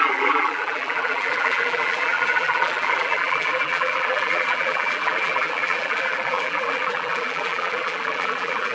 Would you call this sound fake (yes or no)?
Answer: yes